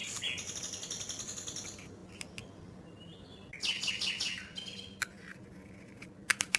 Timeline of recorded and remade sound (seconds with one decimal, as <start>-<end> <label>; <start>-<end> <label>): 0.0-6.6 recorded